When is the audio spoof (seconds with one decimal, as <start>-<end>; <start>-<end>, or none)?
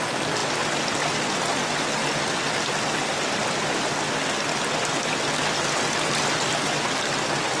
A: none